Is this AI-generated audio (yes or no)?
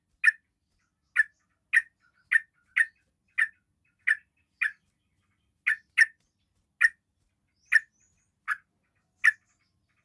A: no